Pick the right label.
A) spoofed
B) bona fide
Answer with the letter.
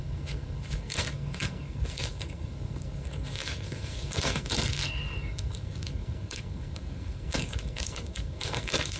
A